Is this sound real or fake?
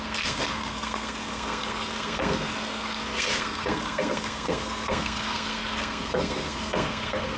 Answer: fake